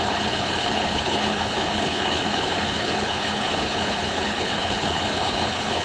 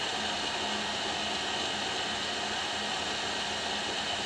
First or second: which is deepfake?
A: first